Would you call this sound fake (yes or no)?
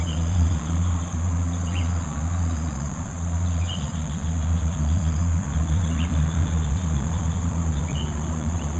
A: yes